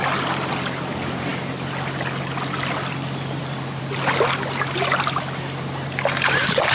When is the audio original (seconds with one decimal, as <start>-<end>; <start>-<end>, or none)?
0.0-6.7